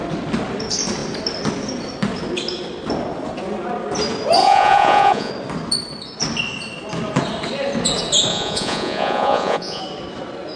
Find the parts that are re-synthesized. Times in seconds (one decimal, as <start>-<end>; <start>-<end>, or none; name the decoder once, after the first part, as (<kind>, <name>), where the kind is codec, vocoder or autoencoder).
4.4-5.3 (vocoder, Vocos); 8.3-9.8